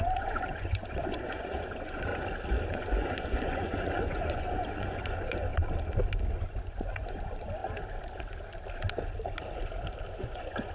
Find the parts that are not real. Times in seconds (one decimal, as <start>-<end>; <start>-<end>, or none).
0.0-2.1; 2.7-5.5; 6.3-7.6; 10.1-10.7